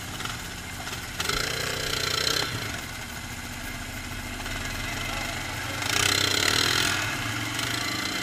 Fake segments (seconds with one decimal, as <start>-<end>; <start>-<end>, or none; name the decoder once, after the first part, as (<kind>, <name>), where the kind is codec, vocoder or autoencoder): none